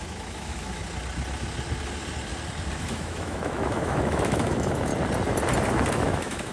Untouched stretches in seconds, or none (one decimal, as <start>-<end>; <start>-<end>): 0.8-2.8; 4.9-5.9